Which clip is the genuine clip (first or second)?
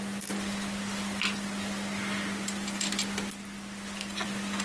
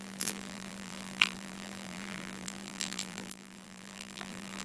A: first